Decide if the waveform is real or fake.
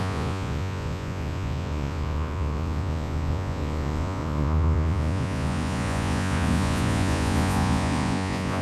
fake